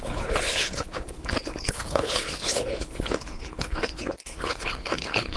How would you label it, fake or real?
fake